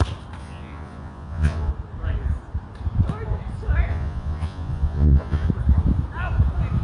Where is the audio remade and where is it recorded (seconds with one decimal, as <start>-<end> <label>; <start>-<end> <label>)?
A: 0.0-0.4 recorded; 0.4-1.7 remade; 1.7-3.9 recorded; 3.9-5.5 remade; 5.5-6.8 recorded